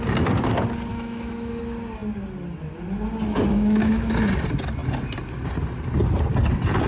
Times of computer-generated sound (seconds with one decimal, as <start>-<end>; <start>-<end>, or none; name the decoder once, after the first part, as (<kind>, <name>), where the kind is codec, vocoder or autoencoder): 0.9-1.6 (autoencoder, DAC-VAE); 3.5-4.1